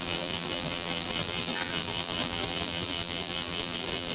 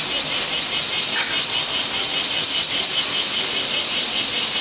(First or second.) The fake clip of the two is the first